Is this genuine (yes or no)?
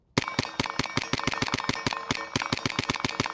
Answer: yes